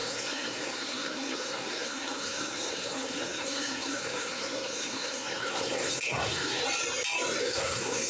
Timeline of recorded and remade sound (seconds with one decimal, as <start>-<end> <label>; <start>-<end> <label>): 0.0-6.6 remade; 6.6-7.4 recorded; 7.4-8.1 remade